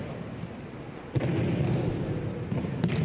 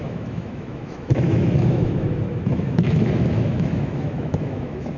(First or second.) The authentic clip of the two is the first